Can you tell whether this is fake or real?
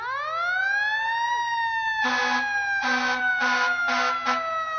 real